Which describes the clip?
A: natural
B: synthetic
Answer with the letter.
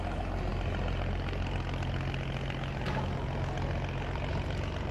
A